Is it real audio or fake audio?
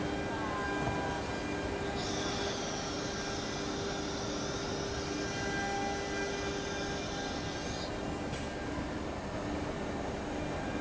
real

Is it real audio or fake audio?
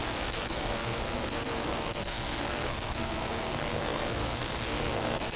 fake